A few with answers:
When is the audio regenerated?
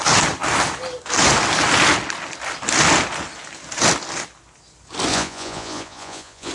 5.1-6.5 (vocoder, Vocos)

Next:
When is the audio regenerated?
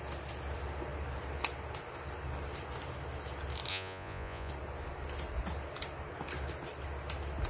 3.7-4.5 (vocoder, Vocos)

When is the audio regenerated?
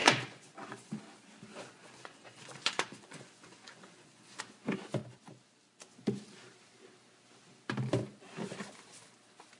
0.0-1.0 (vocoder, Vocos); 1.5-4.4